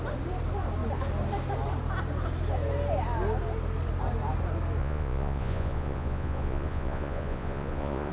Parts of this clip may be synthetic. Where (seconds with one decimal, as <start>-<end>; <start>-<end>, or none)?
4.8-8.1